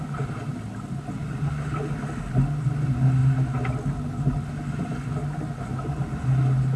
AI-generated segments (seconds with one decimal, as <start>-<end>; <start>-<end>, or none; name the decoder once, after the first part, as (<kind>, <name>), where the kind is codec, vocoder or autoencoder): none